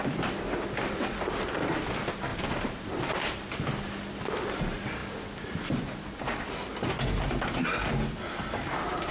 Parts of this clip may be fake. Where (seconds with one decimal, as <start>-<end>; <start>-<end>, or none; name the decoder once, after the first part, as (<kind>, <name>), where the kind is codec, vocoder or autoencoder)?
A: 2.3-3.2 (vocoder, BigVGAN v2)